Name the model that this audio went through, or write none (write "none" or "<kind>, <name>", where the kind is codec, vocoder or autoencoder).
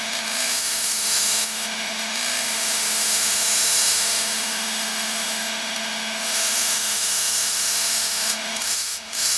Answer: autoencoder, DAC-VAE